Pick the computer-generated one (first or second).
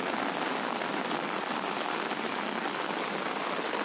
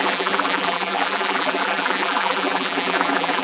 second